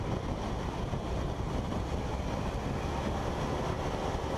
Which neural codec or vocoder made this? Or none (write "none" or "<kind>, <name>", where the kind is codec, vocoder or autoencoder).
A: none